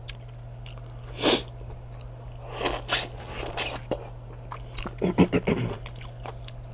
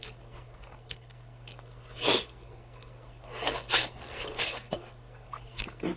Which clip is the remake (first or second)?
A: second